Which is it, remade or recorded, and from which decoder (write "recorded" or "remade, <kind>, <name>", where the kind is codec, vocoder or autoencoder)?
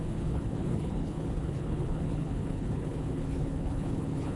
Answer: remade, codec, HILCodec